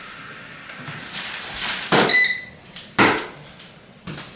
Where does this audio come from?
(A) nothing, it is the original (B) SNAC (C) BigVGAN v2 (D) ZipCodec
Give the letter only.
A